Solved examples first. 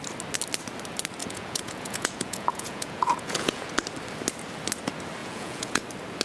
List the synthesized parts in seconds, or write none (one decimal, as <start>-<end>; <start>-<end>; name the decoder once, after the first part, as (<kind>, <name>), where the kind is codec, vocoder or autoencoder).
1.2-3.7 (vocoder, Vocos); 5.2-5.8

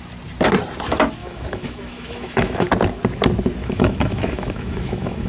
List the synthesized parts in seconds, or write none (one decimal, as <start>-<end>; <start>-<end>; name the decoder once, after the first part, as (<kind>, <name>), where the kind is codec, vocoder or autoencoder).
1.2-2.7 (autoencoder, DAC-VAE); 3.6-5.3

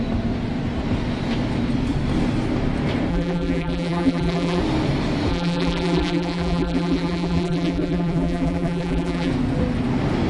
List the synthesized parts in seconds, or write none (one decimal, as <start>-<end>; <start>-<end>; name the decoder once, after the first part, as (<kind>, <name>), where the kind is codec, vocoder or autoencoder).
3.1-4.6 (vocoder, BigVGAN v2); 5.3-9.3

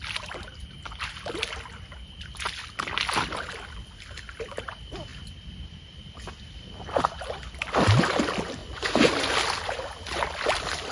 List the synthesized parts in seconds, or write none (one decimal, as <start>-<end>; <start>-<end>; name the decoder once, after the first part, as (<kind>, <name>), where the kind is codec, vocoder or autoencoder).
8.6-9.1 (vocoder, Vocos)

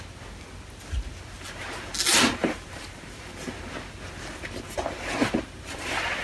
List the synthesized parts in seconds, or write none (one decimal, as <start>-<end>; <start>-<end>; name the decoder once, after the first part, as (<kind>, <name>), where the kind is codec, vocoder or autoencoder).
2.4-3.3 (vocoder, BigVGAN v2); 5.2-5.8

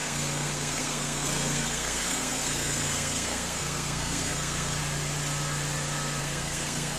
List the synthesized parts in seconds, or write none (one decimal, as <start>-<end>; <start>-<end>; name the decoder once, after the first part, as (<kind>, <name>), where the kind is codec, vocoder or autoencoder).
0.0-4.8 (codec, SNAC); 6.2-7.0